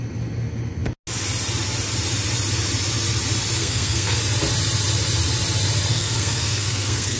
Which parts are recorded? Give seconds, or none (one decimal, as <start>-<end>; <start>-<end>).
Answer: 0.0-3.6; 4.2-5.9